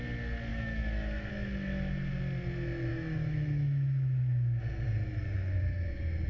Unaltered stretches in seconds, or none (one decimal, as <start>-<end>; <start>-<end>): 0.0-0.5; 1.3-2.9; 4.6-6.3